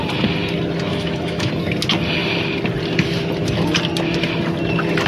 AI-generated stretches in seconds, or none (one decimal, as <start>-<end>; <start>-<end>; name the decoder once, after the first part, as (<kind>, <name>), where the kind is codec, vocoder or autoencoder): 0.9-1.5 (autoencoder, DAC-VAE)

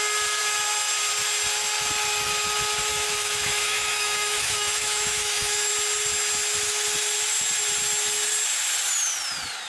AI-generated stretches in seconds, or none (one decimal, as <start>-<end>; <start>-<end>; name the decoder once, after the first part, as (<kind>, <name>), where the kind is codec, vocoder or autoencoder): 2.9-5.7 (autoencoder, DAC-VAE)

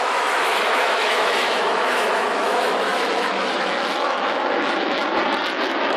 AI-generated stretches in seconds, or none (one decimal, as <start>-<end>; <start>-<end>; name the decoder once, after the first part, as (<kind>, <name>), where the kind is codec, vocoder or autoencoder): 0.0-5.0 (autoencoder, DAC-VAE)

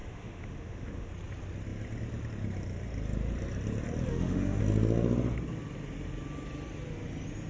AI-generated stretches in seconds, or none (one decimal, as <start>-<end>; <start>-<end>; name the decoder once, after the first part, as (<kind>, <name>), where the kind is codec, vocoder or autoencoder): 0.0-1.1 (autoencoder, DAC-VAE); 4.1-4.6

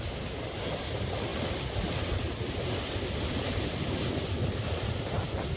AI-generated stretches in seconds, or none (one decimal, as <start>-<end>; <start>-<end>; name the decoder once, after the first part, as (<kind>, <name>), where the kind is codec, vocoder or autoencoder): none

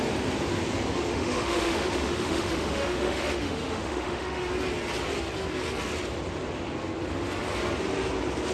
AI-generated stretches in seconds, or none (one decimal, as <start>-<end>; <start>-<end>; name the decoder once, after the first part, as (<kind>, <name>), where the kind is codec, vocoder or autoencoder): 1.1-4.5 (autoencoder, DAC-VAE)

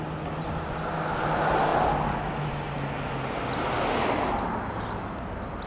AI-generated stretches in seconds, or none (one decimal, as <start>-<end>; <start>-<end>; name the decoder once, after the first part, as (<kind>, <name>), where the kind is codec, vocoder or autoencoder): none